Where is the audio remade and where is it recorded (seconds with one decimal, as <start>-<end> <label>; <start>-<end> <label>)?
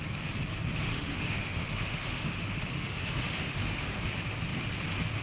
0.0-0.9 recorded; 0.9-4.0 remade; 4.0-5.2 recorded